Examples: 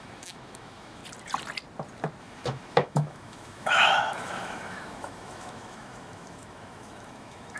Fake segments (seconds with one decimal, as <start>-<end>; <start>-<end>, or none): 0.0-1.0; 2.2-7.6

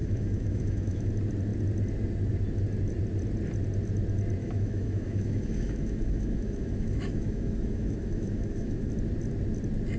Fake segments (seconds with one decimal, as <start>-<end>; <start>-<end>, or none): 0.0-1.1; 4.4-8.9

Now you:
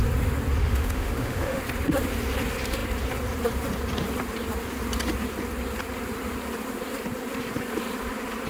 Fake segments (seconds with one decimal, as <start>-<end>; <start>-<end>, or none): 0.6-1.6

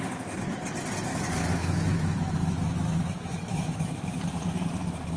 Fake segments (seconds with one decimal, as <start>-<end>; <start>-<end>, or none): 1.1-4.2

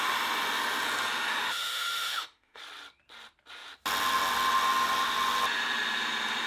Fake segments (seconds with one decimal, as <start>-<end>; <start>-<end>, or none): 1.3-2.6

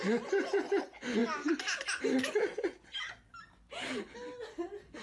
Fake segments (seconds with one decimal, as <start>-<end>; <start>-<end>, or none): none